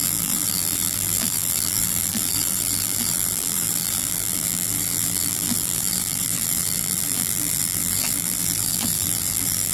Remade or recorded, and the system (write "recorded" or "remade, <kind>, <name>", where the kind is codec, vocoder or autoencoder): remade, vocoder, BigVGAN v2